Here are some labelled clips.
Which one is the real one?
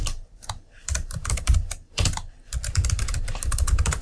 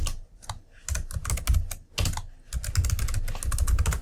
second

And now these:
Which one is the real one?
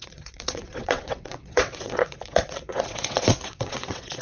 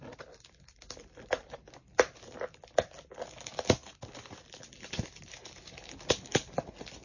second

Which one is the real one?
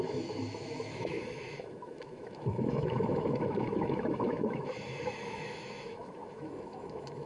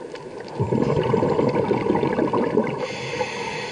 second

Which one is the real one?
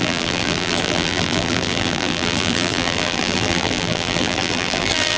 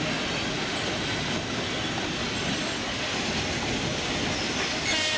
second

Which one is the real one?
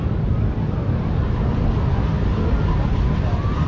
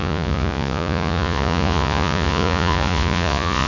first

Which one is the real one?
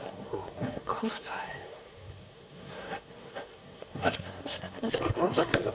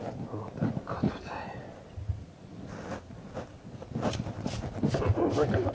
second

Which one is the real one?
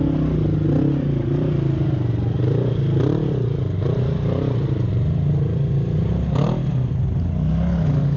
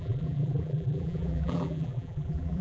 first